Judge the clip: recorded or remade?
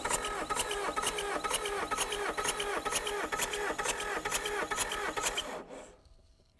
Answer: recorded